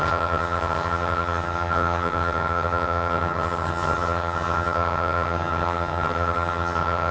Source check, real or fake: fake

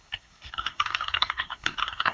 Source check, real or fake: fake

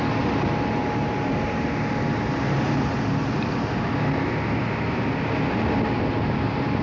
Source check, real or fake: real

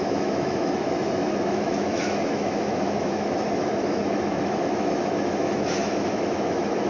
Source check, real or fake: fake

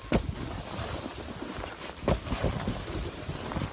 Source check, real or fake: real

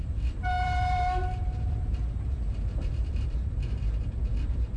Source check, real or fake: fake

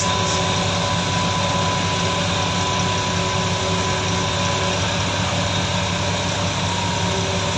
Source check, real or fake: real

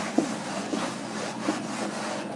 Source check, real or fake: fake